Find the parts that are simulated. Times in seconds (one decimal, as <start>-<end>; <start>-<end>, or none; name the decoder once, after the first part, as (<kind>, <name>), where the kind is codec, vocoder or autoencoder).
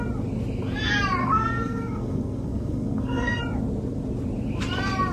1.2-3.4 (codec, SNAC)